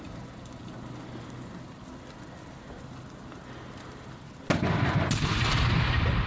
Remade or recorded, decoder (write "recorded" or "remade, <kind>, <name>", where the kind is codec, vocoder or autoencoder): recorded